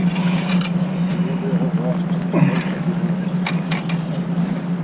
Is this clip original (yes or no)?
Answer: yes